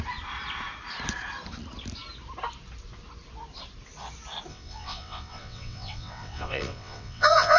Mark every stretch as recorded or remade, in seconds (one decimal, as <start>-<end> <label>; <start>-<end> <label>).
0.0-4.5 recorded; 4.5-7.6 remade